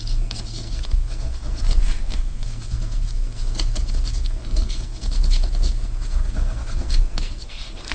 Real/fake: fake